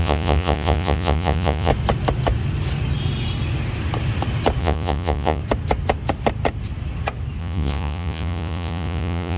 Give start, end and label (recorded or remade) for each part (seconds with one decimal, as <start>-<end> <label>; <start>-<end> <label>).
0.0-1.7 remade; 1.7-4.6 recorded; 4.6-5.4 remade; 5.4-7.4 recorded; 7.4-9.4 remade